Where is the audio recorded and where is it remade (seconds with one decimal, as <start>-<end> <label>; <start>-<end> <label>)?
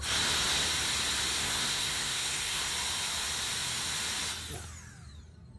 0.0-1.4 recorded; 1.4-2.7 remade; 2.7-5.6 recorded